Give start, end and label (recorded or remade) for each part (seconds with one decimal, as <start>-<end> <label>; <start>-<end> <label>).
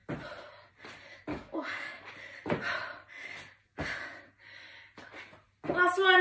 0.0-1.3 recorded; 1.3-2.1 remade; 2.1-6.2 recorded